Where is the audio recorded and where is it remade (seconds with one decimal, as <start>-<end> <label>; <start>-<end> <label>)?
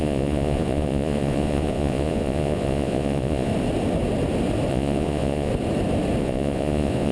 0.0-3.5 remade; 3.5-4.7 recorded; 4.7-5.5 remade; 5.5-6.2 recorded; 6.2-7.1 remade